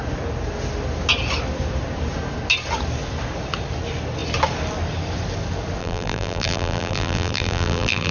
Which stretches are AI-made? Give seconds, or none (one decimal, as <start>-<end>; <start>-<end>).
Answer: 5.8-8.1